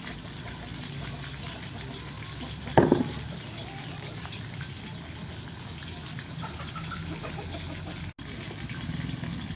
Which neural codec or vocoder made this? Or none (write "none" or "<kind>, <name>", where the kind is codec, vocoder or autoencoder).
none